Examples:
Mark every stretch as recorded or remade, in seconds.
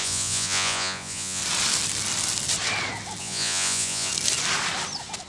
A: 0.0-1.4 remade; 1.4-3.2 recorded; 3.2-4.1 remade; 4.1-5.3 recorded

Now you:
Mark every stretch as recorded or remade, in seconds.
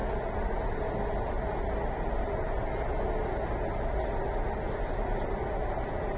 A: 0.0-6.2 recorded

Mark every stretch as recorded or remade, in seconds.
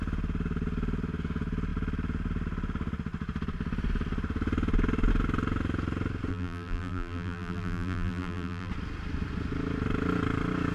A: 0.0-6.3 recorded; 6.3-8.7 remade; 8.7-10.7 recorded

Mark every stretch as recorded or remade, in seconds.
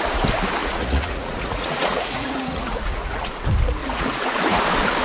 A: 0.0-0.6 recorded; 0.6-3.4 remade; 3.4-3.8 recorded; 3.8-4.6 remade; 4.6-5.0 recorded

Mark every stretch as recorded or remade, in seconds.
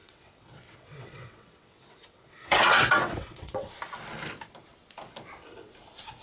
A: 0.0-3.7 remade; 3.7-6.2 recorded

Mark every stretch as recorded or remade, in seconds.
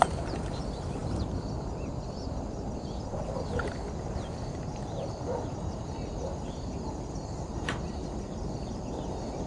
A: 0.0-9.5 recorded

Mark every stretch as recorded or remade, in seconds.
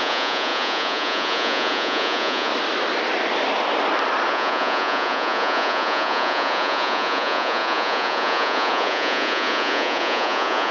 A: 0.0-2.5 remade; 2.5-4.3 recorded; 4.3-10.7 remade